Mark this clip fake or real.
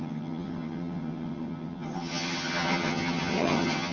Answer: fake